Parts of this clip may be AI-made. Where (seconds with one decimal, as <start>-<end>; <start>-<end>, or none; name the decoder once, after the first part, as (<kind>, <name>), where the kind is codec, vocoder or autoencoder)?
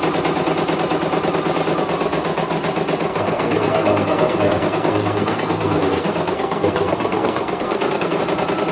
3.1-8.2 (codec, SNAC)